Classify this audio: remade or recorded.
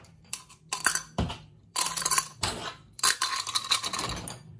remade